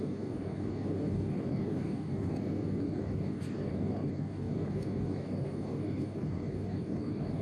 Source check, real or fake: fake